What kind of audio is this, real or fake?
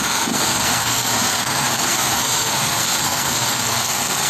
fake